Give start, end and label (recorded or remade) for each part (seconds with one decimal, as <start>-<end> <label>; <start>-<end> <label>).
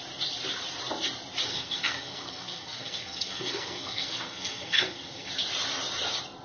0.0-1.5 recorded; 1.5-5.3 remade; 5.3-6.4 recorded